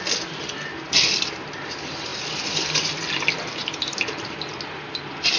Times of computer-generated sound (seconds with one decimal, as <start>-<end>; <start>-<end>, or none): none